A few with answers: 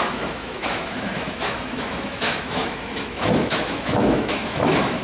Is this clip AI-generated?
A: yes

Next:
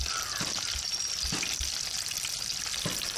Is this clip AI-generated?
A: no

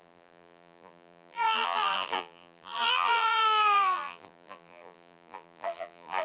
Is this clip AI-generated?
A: yes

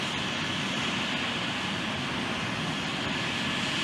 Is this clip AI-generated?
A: no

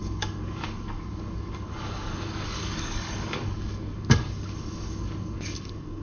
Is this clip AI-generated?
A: yes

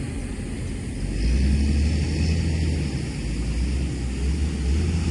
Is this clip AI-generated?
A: no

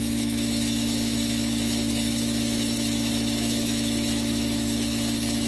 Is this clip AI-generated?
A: yes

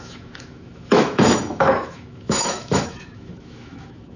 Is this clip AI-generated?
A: yes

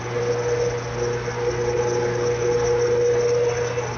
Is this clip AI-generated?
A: no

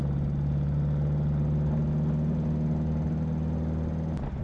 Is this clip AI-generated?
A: no